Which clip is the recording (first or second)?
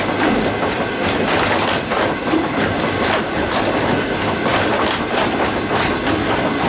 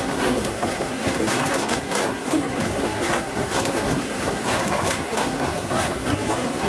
first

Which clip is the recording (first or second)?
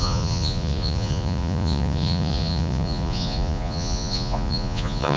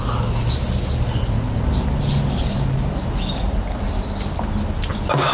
second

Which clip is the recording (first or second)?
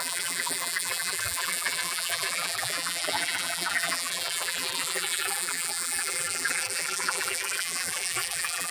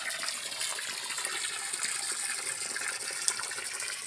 second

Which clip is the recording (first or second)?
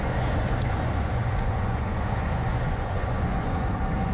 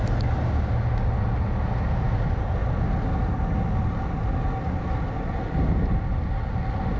second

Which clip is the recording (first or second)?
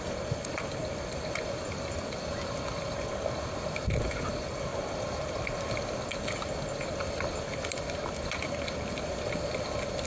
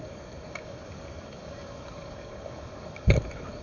first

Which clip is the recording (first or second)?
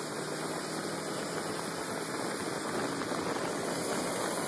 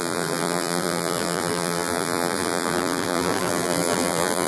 first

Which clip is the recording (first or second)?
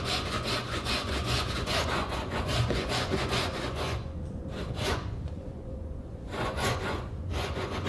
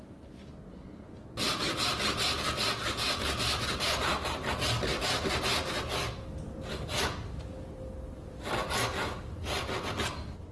second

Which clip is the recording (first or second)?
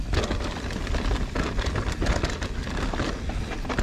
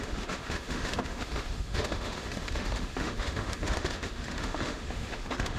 first